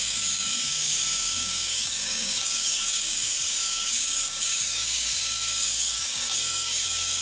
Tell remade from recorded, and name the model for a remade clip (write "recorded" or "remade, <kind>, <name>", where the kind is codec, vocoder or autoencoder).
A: remade, codec, DAC